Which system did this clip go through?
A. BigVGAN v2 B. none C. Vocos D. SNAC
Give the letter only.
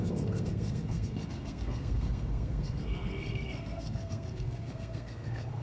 D